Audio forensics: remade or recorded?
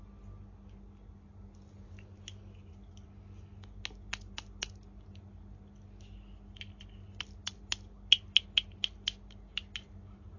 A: recorded